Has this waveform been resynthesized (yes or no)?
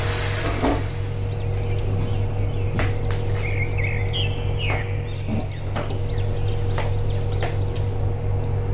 no